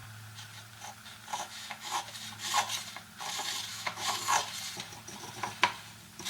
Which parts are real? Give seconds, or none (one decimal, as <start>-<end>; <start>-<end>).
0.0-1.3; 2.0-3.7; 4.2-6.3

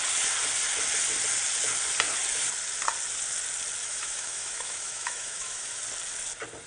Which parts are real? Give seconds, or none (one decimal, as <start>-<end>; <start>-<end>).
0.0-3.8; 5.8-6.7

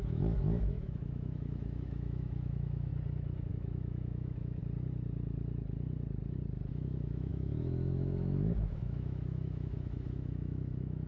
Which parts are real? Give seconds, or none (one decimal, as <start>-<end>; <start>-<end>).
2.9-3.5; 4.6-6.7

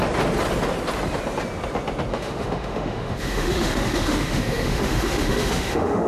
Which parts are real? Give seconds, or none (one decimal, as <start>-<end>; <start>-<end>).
0.0-2.1

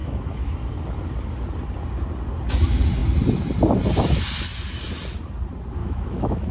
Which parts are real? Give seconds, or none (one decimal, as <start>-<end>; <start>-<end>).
0.5-5.8